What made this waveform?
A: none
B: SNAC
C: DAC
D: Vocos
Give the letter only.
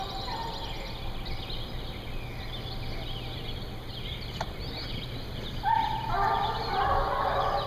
A